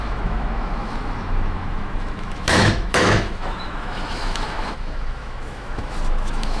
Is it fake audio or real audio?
fake